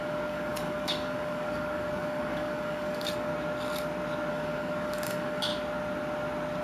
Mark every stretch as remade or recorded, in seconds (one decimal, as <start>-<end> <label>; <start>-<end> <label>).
0.0-3.3 remade; 3.3-4.3 recorded; 4.3-5.5 remade; 5.5-6.6 recorded